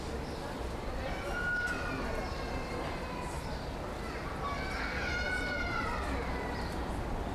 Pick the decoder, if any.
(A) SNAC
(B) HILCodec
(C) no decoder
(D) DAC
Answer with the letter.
C